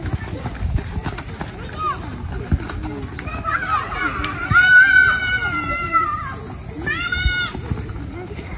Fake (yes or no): no